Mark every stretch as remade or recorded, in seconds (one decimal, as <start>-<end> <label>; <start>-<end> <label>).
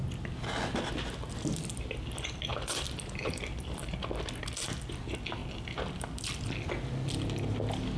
0.0-2.5 recorded; 2.5-3.8 remade; 3.8-5.4 recorded; 5.4-6.7 remade; 6.7-8.0 recorded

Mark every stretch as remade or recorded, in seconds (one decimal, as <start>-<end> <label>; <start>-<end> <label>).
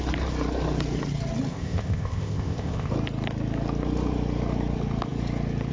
0.0-1.5 recorded; 1.5-2.9 remade; 2.9-5.7 recorded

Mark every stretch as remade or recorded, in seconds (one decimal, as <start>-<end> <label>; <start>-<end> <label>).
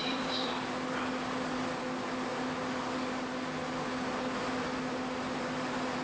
0.0-0.5 remade; 0.5-6.0 recorded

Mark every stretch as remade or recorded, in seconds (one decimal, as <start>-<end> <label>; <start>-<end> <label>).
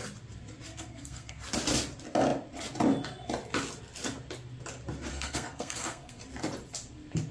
0.0-0.7 recorded; 0.7-1.4 remade; 1.4-5.1 recorded; 5.1-6.2 remade; 6.2-7.3 recorded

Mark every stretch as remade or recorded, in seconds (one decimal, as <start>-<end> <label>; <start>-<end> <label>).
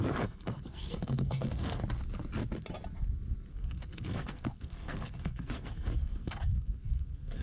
0.0-1.8 remade; 1.8-3.5 recorded; 3.5-7.4 remade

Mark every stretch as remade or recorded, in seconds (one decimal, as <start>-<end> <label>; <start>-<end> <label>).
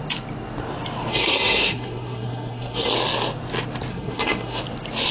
0.0-1.1 recorded; 1.1-2.9 remade; 2.9-3.9 recorded; 3.9-4.6 remade; 4.6-5.1 recorded